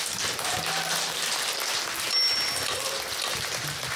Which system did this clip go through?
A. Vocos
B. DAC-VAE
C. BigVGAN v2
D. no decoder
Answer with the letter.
D